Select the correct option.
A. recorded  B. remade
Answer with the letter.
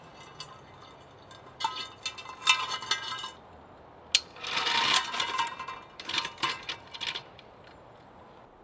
A